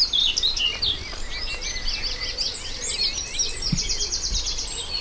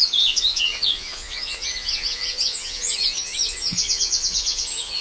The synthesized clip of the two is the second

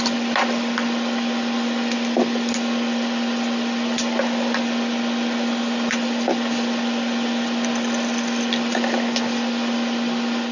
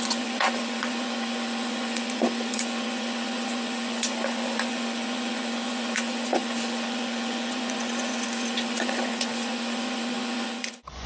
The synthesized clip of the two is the second